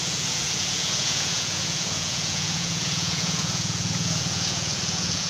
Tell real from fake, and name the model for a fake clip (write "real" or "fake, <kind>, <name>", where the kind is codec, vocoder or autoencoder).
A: fake, vocoder, Vocos